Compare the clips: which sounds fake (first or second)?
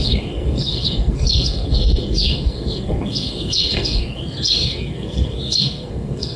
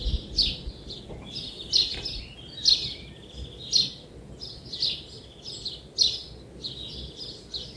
first